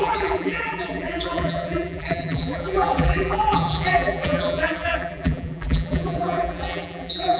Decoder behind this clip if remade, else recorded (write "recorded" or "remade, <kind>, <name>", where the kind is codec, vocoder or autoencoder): remade, vocoder, BigVGAN v2